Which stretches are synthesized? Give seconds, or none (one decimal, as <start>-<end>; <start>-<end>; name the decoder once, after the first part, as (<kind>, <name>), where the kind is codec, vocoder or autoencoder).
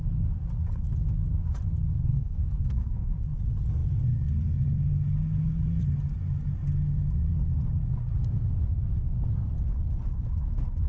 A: 2.1-3.1 (codec, SNAC)